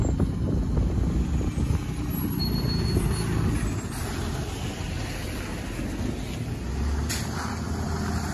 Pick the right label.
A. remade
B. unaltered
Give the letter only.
B